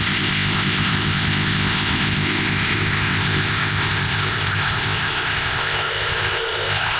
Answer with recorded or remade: remade